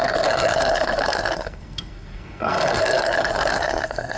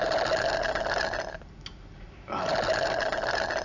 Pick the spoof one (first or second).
first